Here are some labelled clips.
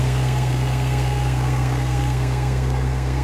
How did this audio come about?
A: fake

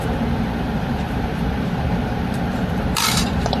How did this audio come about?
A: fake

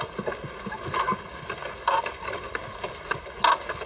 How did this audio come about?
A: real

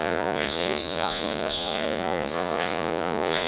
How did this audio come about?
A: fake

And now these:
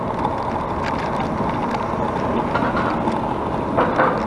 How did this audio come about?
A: real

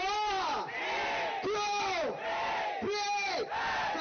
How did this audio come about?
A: real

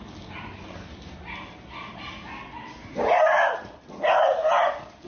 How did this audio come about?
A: real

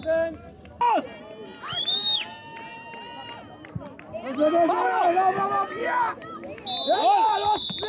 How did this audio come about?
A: real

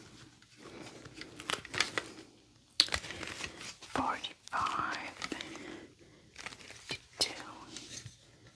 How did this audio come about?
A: real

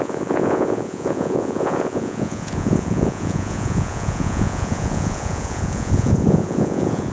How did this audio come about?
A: fake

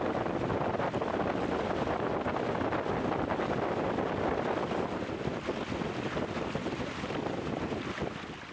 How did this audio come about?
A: real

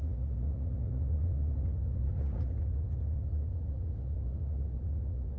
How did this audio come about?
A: fake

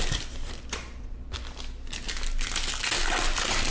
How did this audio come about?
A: real